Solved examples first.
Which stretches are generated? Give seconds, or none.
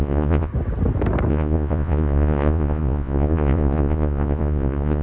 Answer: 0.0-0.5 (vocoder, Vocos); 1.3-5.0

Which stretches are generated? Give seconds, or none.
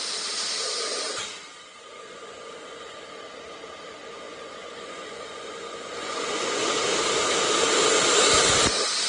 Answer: 1.7-3.0 (vocoder, Vocos); 4.0-6.7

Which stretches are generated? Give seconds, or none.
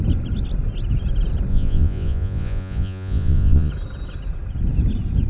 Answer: 1.5-3.7 (vocoder, Vocos)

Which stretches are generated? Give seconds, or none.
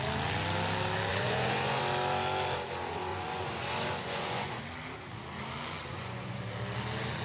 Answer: 1.1-1.8 (vocoder, Vocos); 3.1-4.6; 5.8-6.4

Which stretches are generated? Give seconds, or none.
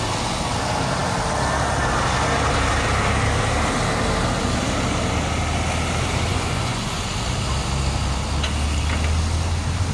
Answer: 6.3-7.1 (vocoder, Vocos)